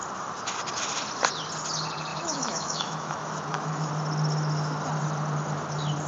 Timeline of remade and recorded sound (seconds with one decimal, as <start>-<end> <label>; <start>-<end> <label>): 0.0-2.1 recorded; 2.1-3.9 remade; 3.9-6.1 recorded